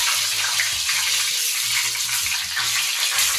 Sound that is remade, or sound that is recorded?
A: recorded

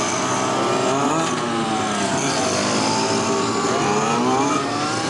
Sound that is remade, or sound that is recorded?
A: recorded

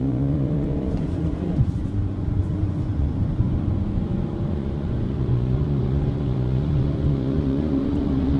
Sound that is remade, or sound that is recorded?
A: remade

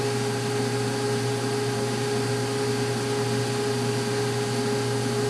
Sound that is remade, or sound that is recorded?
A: recorded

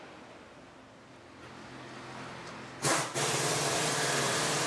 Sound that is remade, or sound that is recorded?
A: recorded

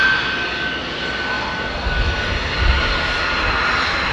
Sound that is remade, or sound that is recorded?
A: recorded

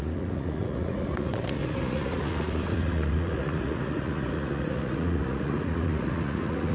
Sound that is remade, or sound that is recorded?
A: remade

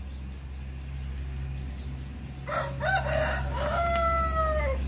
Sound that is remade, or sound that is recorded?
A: recorded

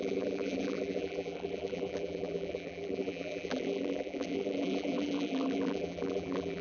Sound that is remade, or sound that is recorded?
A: remade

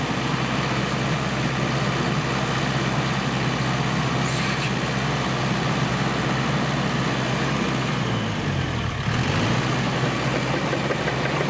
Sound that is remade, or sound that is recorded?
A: recorded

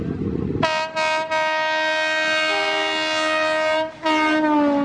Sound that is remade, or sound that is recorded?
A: recorded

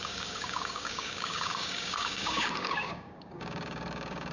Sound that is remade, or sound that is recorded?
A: remade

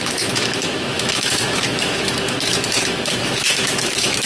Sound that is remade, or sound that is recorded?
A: remade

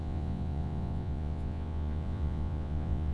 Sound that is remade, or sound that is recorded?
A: remade